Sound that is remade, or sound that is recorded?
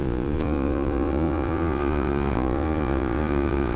remade